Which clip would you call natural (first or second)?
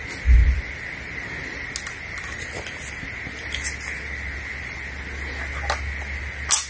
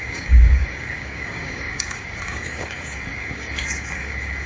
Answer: first